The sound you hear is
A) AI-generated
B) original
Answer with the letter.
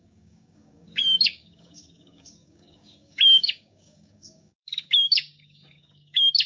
A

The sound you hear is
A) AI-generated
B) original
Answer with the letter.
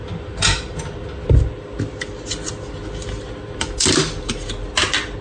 B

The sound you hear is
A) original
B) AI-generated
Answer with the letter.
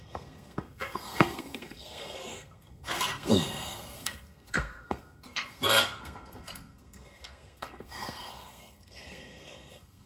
B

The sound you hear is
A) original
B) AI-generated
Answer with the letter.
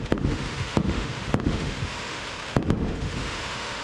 B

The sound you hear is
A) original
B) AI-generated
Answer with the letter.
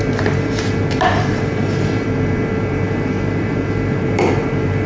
B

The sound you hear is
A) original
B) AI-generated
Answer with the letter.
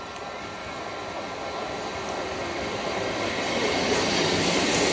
A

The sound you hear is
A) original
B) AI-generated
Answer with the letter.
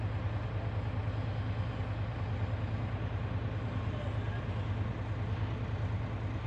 A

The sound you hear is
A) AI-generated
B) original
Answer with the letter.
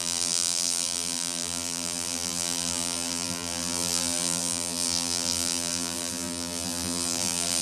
A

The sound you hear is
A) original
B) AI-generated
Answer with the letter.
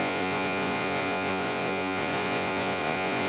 B